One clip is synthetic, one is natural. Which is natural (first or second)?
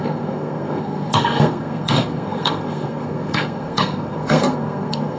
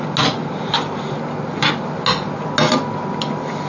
second